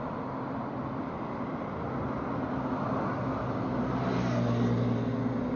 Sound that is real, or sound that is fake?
real